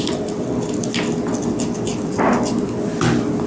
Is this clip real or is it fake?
real